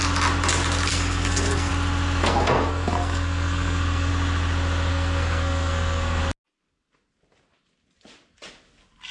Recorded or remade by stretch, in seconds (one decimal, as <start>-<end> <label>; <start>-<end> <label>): 0.0-0.9 recorded; 0.9-1.7 remade; 1.7-2.2 recorded; 2.2-4.1 remade; 4.1-4.9 recorded; 4.9-6.2 remade; 6.2-9.1 recorded